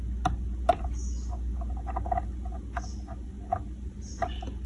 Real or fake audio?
real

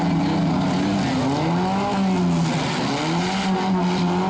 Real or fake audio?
real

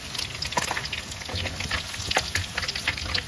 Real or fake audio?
real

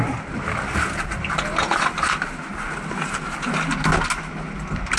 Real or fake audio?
real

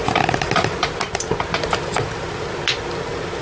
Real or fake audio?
real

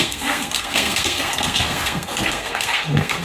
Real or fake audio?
fake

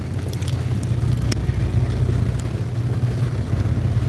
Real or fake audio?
real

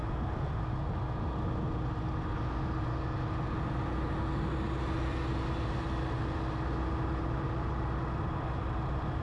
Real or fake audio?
real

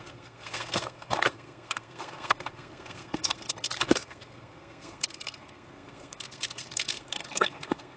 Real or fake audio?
fake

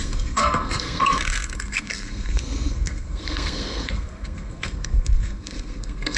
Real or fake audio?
fake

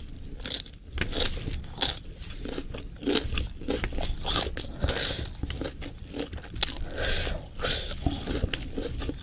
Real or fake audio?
real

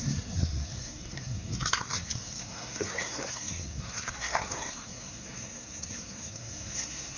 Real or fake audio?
fake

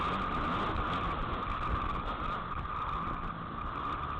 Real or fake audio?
real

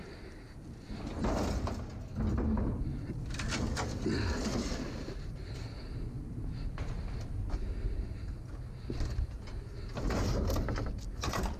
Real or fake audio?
real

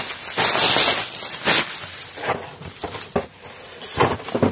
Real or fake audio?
real